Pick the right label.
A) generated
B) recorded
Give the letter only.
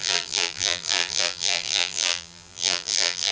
A